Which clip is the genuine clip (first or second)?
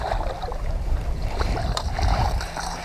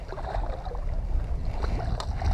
second